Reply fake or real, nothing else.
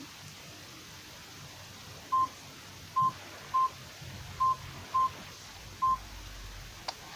real